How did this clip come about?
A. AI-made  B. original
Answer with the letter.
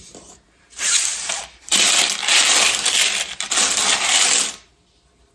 B